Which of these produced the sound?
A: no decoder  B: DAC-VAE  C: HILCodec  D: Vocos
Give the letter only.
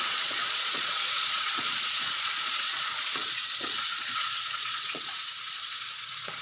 D